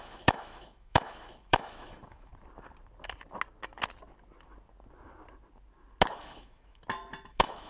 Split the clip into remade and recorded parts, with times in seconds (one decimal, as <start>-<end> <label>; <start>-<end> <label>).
0.0-2.3 remade; 2.3-6.1 recorded; 6.1-6.8 remade; 6.8-7.3 recorded; 7.3-7.7 remade